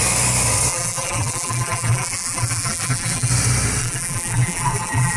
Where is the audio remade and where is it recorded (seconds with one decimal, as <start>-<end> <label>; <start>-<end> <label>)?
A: 0.0-0.7 recorded; 0.7-3.3 remade; 3.3-3.8 recorded; 3.8-5.2 remade